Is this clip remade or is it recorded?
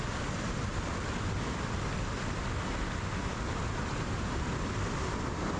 recorded